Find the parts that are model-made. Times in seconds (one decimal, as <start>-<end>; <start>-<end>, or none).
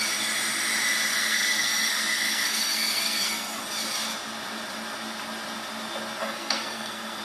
1.1-3.6; 6.2-7.2